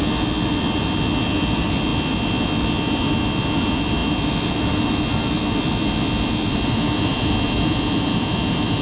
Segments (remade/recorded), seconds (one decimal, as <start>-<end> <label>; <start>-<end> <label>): 0.0-1.9 remade; 1.9-2.4 recorded; 2.4-8.8 remade